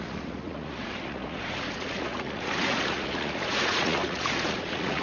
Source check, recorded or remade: remade